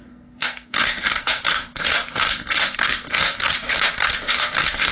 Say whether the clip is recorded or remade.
remade